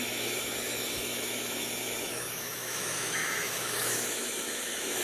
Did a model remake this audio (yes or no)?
yes